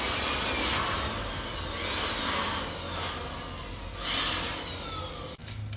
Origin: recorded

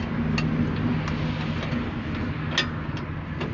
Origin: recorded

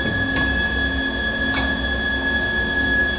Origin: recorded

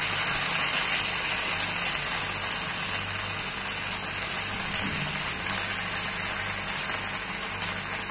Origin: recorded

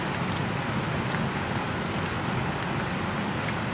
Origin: recorded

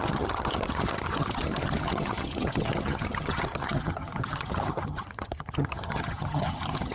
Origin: remade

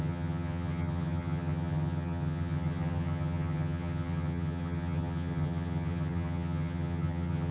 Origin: remade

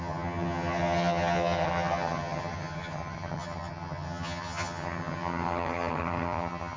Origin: remade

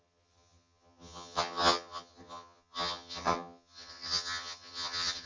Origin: remade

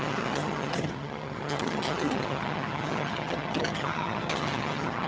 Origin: remade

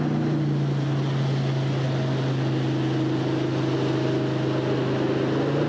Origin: recorded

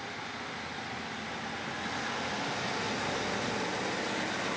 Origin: recorded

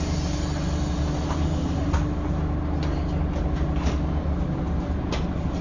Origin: recorded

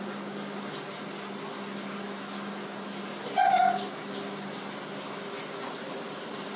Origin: recorded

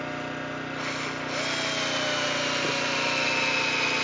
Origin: recorded